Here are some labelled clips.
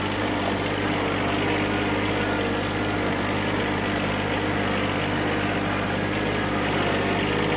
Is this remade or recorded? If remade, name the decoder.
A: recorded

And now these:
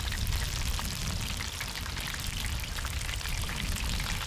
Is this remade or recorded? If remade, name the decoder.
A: recorded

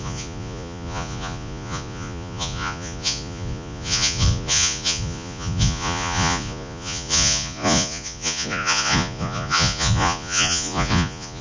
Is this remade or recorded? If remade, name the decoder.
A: remade, vocoder, Vocos